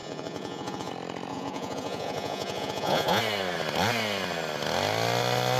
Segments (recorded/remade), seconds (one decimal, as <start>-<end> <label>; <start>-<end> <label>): 0.0-0.9 remade; 0.9-1.3 recorded; 1.3-3.2 remade; 3.2-5.6 recorded

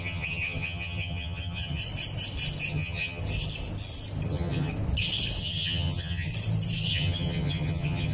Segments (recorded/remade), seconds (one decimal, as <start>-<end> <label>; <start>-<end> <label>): 0.0-1.8 remade; 1.8-2.7 recorded; 2.7-3.2 remade; 3.2-4.3 recorded; 4.3-4.7 remade; 4.7-5.4 recorded; 5.4-6.3 remade; 6.3-6.9 recorded; 6.9-8.1 remade

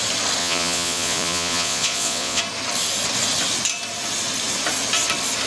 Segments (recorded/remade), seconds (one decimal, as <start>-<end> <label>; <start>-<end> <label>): 0.0-0.4 recorded; 0.4-2.4 remade; 2.4-5.5 recorded

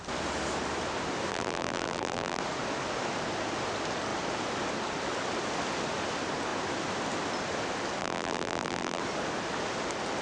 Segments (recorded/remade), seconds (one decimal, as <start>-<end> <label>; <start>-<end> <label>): 0.0-1.3 recorded; 1.3-2.4 remade; 2.4-8.0 recorded; 8.0-9.0 remade; 9.0-10.2 recorded